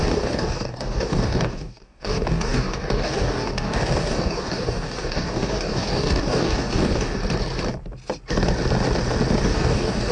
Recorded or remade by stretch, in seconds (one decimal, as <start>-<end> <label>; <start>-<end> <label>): 0.0-7.2 remade; 7.2-9.4 recorded; 9.4-10.1 remade